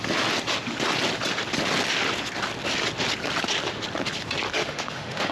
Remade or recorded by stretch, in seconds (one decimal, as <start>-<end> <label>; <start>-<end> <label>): 0.0-4.6 recorded; 4.6-5.3 remade